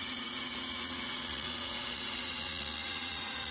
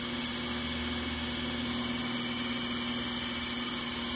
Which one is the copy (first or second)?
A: first